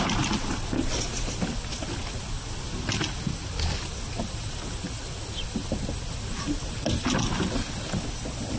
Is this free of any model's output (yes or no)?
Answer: yes